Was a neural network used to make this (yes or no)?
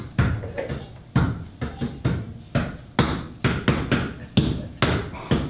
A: no